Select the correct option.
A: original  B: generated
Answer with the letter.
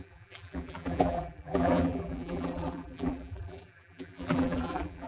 B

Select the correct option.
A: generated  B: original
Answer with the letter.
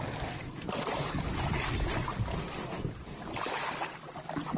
B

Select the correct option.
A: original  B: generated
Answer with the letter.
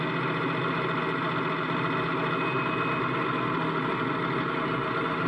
A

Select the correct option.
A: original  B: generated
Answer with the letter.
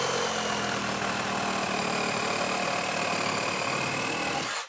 A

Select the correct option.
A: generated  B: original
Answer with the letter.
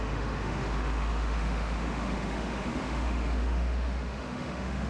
A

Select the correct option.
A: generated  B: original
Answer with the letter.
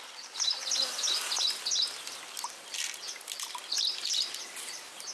B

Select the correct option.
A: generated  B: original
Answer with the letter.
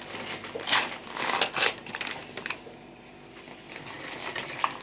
B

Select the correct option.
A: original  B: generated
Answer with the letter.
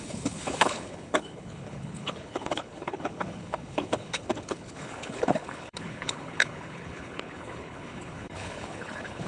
B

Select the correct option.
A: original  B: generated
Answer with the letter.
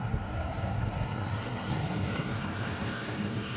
B